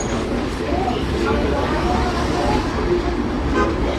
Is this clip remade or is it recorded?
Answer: remade